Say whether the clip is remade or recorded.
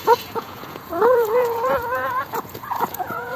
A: remade